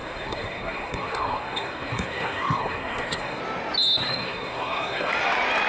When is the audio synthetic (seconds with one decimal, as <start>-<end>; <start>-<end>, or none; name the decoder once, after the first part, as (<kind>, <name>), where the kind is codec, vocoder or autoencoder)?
0.0-3.4 (codec, SNAC); 4.0-5.1